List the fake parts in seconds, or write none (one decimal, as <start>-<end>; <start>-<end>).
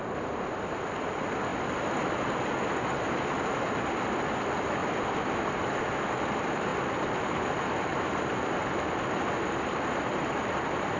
none